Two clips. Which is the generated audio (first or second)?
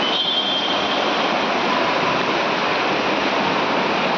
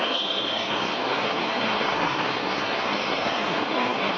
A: second